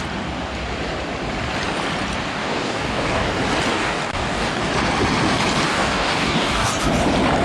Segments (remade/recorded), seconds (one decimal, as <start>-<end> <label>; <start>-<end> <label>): 0.0-2.3 recorded; 2.3-3.3 remade; 3.3-3.7 recorded; 3.7-4.6 remade; 4.6-5.7 recorded; 5.7-6.7 remade; 6.7-7.4 recorded